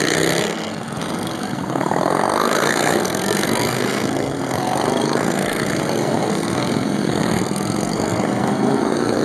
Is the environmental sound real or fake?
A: fake